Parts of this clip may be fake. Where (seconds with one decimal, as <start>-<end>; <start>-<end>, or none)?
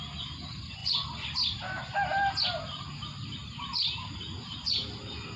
none